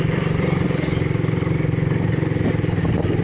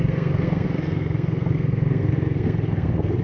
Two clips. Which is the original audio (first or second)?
first